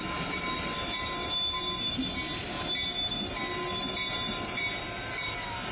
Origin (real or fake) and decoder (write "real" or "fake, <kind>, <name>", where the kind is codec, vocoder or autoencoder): real